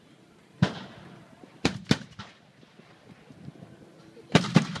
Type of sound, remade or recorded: remade